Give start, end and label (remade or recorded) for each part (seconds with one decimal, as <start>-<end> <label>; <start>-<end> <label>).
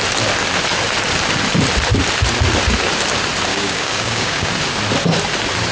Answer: 0.0-3.5 recorded; 3.5-4.5 remade; 4.5-5.7 recorded